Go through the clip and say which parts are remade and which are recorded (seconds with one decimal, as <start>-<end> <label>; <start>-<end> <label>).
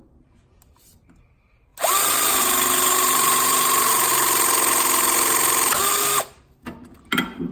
0.0-7.5 recorded